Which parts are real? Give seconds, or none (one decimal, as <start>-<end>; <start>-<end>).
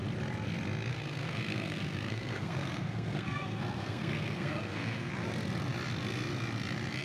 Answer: 0.0-0.9; 5.1-7.0